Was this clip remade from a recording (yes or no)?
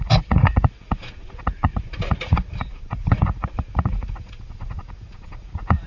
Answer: yes